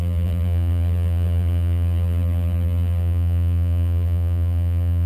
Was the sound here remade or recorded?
remade